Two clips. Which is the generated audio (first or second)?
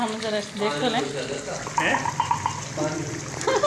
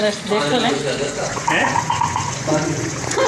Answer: second